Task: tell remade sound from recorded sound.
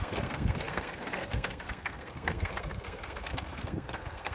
remade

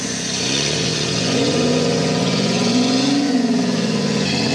remade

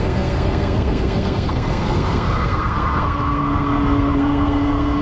remade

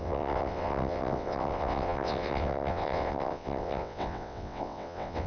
remade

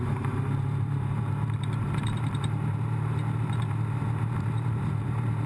remade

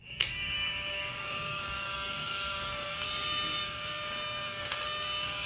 remade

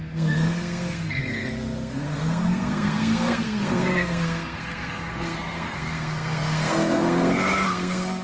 remade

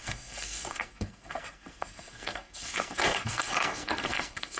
remade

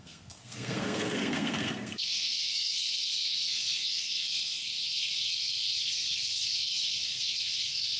remade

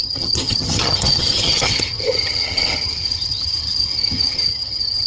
remade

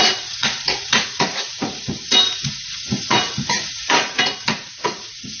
remade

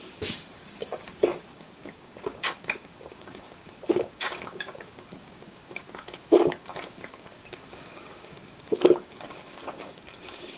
remade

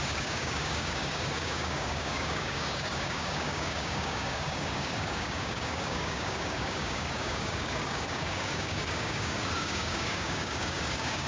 remade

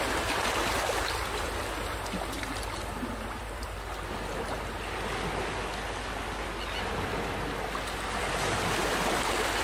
recorded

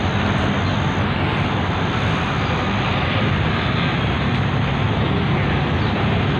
recorded